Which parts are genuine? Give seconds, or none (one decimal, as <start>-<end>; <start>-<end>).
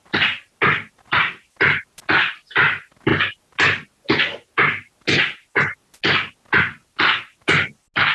0.0-8.1